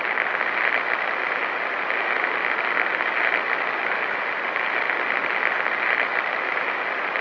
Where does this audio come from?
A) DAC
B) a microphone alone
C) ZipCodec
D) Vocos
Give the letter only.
B